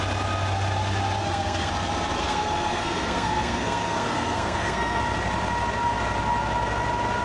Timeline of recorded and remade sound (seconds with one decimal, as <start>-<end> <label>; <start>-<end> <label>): 0.0-1.2 recorded; 1.2-1.7 remade; 1.7-2.2 recorded; 2.2-5.0 remade; 5.0-7.2 recorded